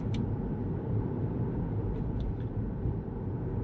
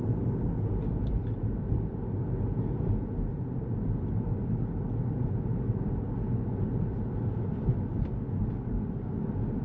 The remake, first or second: first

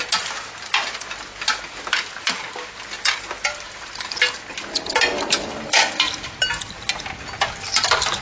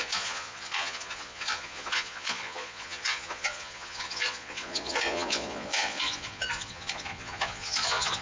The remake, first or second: second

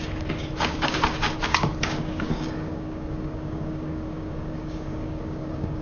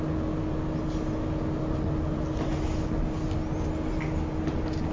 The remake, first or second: first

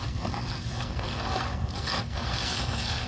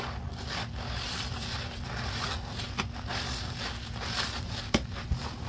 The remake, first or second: first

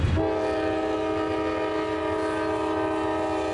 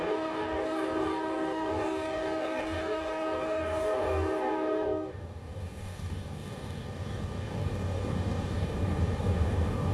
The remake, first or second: second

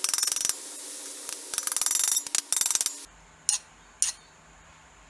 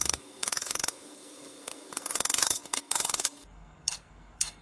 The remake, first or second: second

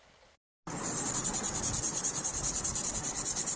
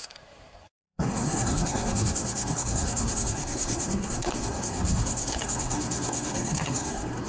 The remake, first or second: second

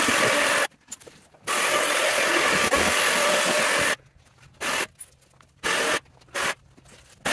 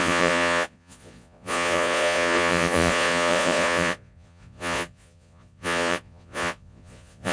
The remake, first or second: second